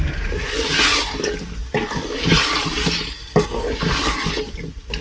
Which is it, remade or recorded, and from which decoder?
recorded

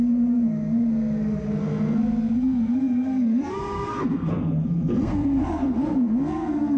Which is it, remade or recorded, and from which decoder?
remade, codec, SNAC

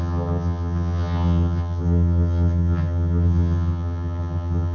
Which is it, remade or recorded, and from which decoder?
remade, vocoder, HiFi-GAN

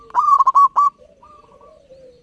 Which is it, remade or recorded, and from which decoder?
remade, vocoder, BigVGAN v2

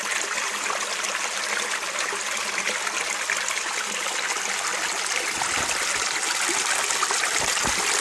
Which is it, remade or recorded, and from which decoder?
recorded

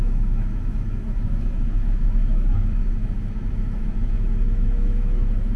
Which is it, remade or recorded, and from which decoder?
remade, autoencoder, DAC-VAE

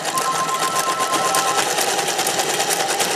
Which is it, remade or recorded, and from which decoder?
recorded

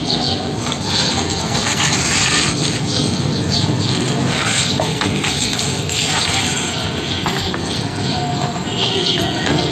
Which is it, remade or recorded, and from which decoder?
remade, codec, SNAC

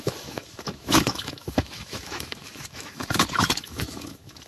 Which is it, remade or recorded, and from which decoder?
remade, autoencoder, DAC-VAE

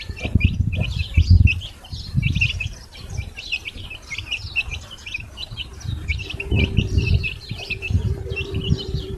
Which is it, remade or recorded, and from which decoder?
remade, vocoder, BigVGAN v2